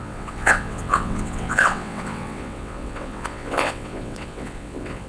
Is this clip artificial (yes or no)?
yes